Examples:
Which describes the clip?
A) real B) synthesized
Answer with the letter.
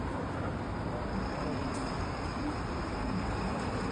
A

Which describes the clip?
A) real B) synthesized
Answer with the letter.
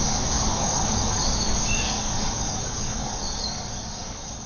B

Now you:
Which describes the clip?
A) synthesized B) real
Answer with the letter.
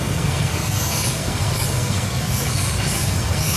A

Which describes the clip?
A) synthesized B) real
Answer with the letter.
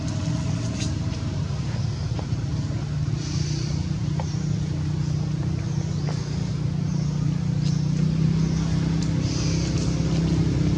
B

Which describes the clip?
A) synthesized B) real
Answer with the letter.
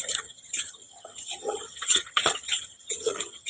A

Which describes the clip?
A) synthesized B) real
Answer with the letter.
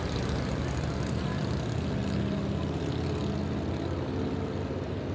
B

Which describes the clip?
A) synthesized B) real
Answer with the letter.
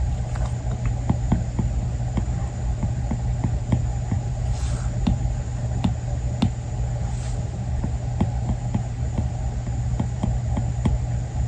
B